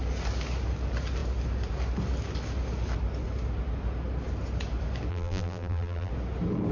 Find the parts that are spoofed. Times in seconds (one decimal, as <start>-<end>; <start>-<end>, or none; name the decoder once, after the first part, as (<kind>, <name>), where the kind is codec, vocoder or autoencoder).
5.1-6.1 (vocoder, BigVGAN v2)